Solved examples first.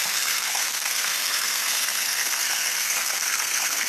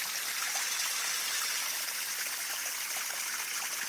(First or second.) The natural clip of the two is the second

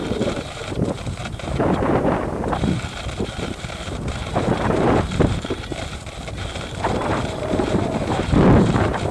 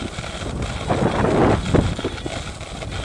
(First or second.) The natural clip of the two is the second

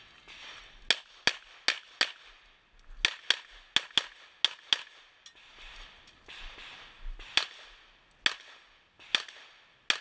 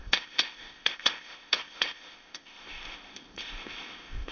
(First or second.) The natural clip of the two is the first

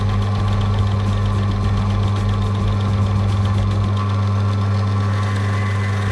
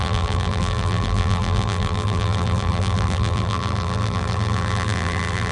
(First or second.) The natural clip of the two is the first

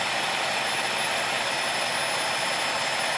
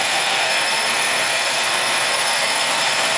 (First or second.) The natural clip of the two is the first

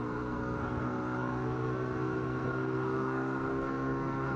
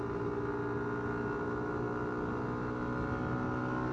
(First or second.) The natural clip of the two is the second